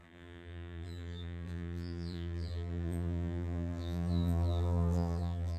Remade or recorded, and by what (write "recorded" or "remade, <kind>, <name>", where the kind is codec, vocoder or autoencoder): remade, vocoder, BigVGAN v2